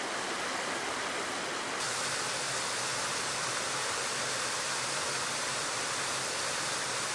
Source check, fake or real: real